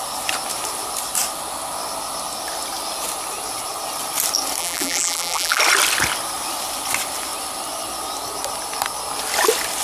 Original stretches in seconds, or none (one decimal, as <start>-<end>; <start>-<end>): 0.0-4.6; 5.6-9.8